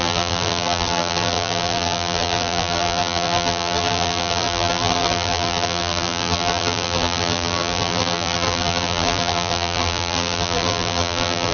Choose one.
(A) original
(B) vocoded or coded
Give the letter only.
B